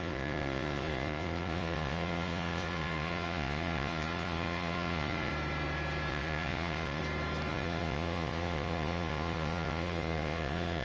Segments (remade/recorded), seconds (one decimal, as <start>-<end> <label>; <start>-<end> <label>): 0.0-5.3 remade; 5.3-6.1 recorded; 6.1-7.0 remade; 7.0-7.5 recorded; 7.5-10.8 remade